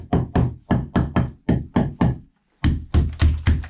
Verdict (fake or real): real